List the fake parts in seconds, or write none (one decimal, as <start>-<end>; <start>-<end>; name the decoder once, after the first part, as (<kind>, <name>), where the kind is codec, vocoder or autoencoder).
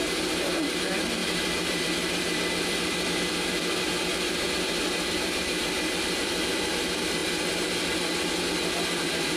0.0-7.2 (vocoder, BigVGAN v2); 9.0-9.4